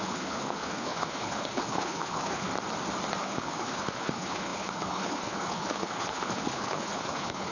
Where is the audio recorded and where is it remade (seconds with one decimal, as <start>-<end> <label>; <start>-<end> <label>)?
0.0-2.5 remade; 2.5-3.2 recorded; 3.2-7.5 remade